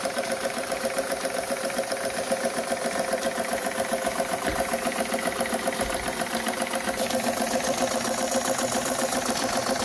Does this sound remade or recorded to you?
remade